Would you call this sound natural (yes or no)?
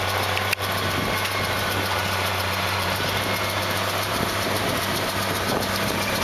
no